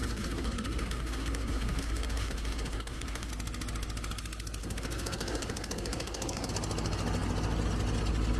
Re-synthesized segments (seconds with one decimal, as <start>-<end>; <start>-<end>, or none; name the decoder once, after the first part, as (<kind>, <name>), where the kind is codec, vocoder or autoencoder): 0.0-3.3 (codec, SNAC); 4.6-6.5